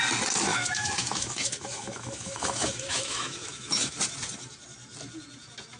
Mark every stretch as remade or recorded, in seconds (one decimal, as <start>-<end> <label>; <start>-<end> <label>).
0.0-0.5 recorded; 0.5-4.0 remade; 4.0-5.8 recorded

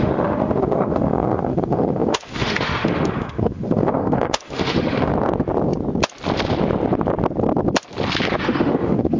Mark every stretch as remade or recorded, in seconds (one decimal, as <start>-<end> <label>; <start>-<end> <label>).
0.0-5.1 remade; 5.1-8.4 recorded; 8.4-9.2 remade

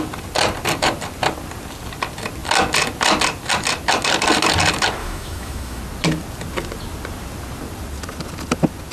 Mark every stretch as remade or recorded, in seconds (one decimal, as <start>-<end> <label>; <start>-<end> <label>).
0.0-5.0 recorded; 5.0-5.8 remade; 5.8-8.9 recorded

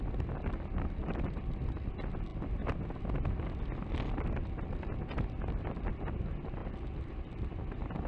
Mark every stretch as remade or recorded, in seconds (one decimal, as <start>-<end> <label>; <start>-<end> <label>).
0.0-8.1 recorded

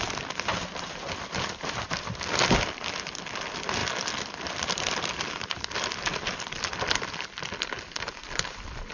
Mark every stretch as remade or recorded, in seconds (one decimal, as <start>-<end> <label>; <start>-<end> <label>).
0.0-8.9 recorded

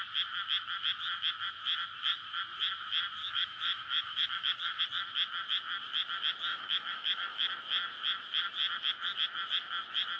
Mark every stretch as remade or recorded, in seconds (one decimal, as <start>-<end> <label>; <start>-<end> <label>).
0.0-3.2 recorded; 3.2-4.8 remade; 4.8-6.5 recorded; 6.5-7.5 remade; 7.5-10.2 recorded

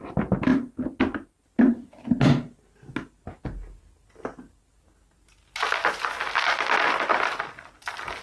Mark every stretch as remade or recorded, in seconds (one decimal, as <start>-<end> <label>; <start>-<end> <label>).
0.0-8.2 recorded